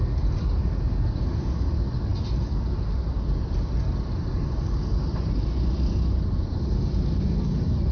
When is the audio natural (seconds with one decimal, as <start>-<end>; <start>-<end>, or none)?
0.0-7.9